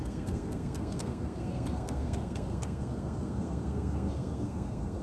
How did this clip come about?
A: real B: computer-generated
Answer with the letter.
B